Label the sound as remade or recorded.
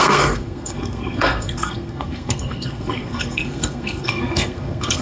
remade